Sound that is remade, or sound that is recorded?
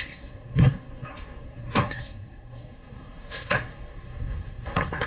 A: remade